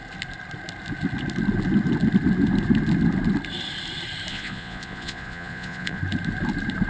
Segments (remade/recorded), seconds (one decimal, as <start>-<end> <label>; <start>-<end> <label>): 0.0-4.3 recorded; 4.3-6.0 remade; 6.0-6.9 recorded